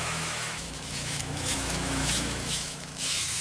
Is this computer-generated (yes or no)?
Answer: yes